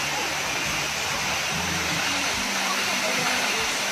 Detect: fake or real fake